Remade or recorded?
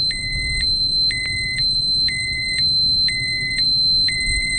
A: remade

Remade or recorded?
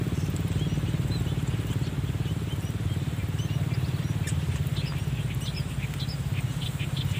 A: recorded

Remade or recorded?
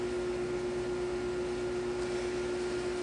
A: recorded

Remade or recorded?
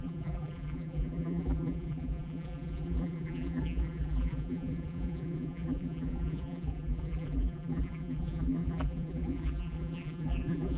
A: remade